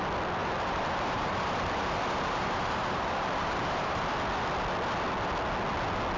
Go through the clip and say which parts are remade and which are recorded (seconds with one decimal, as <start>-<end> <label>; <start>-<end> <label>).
0.0-0.4 recorded; 0.4-4.1 remade; 4.1-6.2 recorded